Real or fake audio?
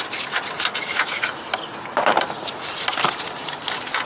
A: real